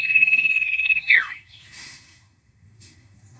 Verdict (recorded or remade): remade